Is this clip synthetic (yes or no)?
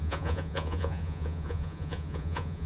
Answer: yes